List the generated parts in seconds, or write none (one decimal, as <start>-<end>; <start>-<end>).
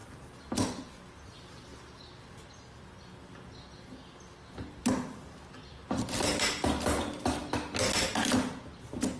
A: none